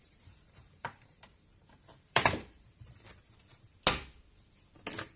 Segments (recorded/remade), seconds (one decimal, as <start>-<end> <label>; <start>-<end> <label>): 0.0-3.1 remade; 3.1-5.2 recorded

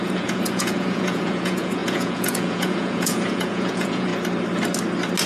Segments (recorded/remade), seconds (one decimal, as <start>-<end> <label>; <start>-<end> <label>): 0.0-4.1 remade; 4.1-5.3 recorded

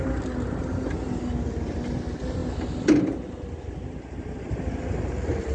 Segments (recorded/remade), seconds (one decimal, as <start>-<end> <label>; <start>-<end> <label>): 0.0-5.5 recorded